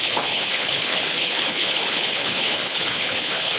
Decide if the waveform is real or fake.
fake